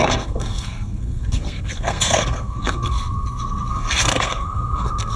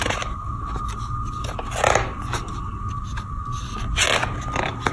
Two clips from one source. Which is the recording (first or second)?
second